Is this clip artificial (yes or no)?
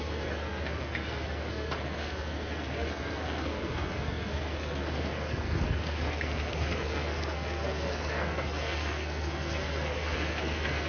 yes